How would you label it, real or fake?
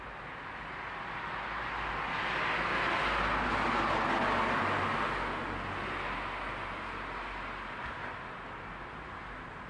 real